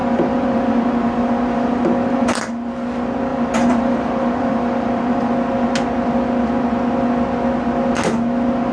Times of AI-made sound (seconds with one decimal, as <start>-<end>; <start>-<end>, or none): 0.0-2.5; 3.3-5.3